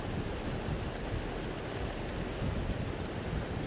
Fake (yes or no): no